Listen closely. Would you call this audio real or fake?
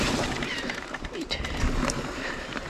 fake